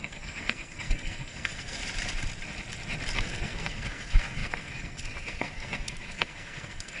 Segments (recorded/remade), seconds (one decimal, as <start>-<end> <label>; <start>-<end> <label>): 0.0-1.8 remade; 1.8-3.2 recorded; 3.2-7.0 remade